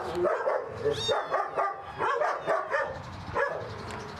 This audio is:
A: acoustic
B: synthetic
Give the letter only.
A